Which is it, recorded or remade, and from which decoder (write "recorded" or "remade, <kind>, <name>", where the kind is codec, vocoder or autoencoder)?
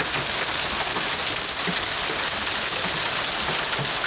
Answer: recorded